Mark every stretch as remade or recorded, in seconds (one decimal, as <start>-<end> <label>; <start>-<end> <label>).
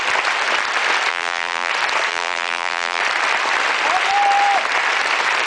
0.0-1.1 recorded; 1.1-1.7 remade; 1.7-2.1 recorded; 2.1-3.0 remade; 3.0-5.5 recorded